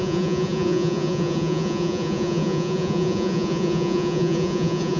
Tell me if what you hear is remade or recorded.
remade